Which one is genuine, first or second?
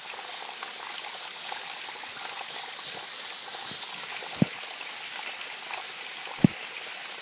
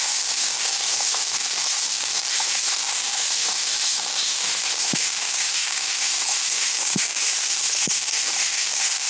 first